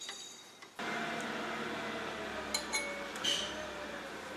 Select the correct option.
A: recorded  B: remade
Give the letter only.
A